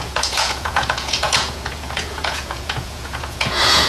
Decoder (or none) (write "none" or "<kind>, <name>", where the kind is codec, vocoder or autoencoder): vocoder, Vocos